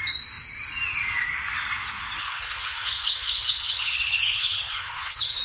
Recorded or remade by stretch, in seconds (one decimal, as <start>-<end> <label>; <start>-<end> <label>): 0.0-2.2 recorded; 2.2-5.4 remade